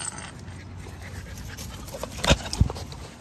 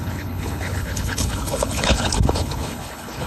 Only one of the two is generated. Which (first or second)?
second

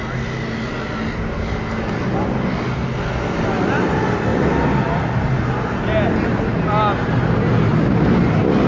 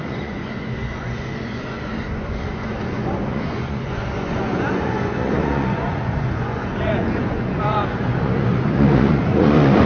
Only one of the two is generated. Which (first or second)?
second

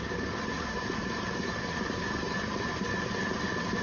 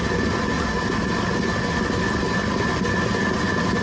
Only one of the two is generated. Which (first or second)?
first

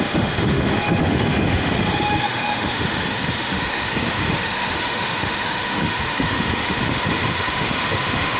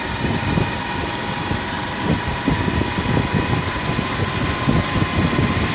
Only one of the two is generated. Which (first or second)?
first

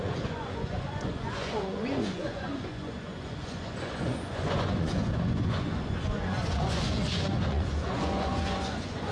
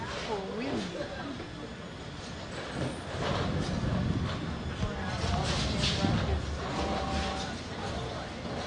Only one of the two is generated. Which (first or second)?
first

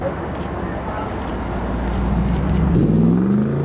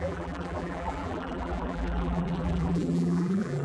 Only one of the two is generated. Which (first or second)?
second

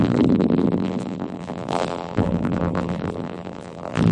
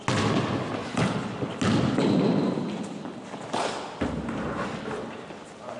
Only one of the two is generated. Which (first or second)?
first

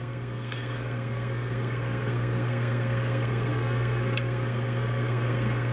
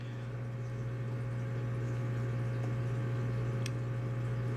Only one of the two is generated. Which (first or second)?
first